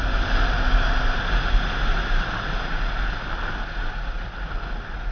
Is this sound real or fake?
real